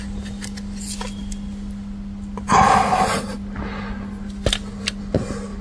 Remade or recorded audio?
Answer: recorded